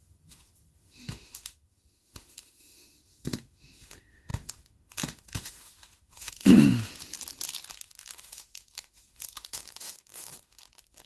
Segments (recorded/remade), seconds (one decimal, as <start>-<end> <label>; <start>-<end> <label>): 0.0-6.9 remade; 6.9-7.7 recorded; 7.7-11.1 remade